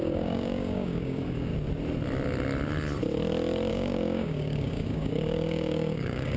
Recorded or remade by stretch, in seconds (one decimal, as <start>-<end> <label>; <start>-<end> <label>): 0.0-1.5 remade; 1.5-3.7 recorded; 3.7-6.4 remade